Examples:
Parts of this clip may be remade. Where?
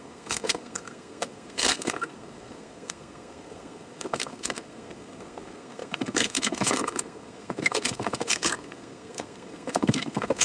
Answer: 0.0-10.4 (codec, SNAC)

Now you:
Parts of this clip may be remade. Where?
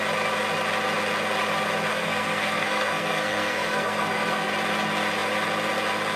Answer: 1.9-4.5 (codec, SNAC)